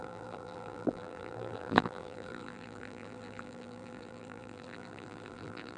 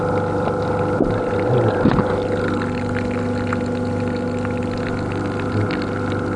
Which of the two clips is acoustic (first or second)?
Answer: second